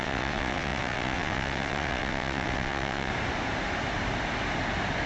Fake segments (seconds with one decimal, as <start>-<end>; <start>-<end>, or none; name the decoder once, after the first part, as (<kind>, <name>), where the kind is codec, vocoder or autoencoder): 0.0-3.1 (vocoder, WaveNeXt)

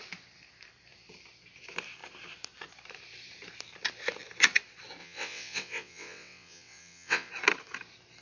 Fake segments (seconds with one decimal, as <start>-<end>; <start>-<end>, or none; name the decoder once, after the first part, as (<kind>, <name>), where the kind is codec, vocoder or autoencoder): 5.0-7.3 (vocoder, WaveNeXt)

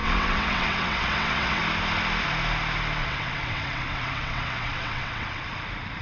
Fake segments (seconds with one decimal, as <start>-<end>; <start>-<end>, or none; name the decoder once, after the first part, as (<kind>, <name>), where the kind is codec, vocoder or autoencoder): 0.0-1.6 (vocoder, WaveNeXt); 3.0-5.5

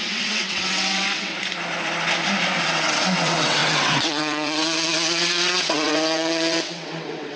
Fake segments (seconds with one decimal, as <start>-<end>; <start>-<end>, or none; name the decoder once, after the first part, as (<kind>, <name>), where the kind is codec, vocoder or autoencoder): 0.0-1.3 (vocoder, WaveNeXt); 2.6-7.4

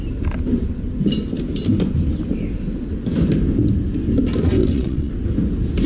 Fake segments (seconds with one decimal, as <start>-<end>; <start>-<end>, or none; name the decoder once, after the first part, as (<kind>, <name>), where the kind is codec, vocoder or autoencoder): 4.6-5.1 (vocoder, WaveNeXt)